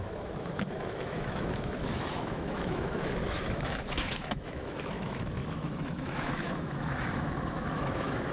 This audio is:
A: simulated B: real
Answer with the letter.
A